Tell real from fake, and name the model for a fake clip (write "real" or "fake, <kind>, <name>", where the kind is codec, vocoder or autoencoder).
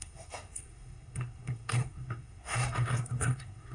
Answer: fake, codec, SNAC